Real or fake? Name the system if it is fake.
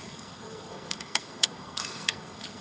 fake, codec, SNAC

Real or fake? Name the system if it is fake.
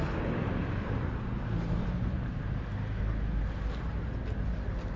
real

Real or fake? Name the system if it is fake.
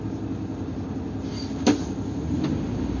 real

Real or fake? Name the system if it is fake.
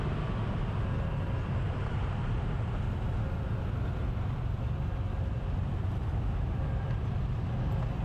real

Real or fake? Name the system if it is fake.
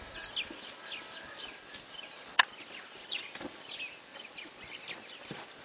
real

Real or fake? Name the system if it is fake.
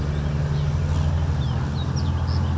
real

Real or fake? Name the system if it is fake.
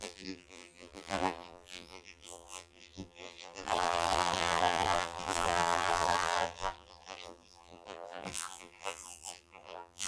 fake, vocoder, BigVGAN v2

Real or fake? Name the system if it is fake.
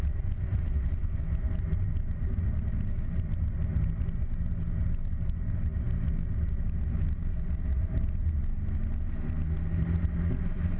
real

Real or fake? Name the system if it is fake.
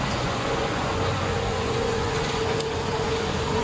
fake, vocoder, Vocos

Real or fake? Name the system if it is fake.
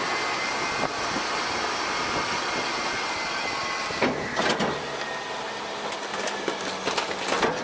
real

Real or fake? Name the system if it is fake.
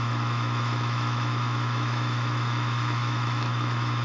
fake, autoencoder, DAC-VAE